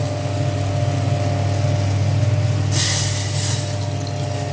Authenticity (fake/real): real